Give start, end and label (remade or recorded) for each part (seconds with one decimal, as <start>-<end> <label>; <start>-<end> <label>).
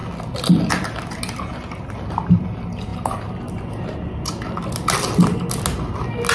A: 0.0-6.3 recorded